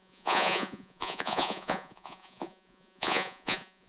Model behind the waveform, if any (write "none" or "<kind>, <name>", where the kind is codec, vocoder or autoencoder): vocoder, Vocos